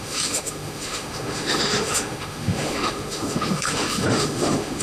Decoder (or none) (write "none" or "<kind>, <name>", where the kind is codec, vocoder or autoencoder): autoencoder, DAC-VAE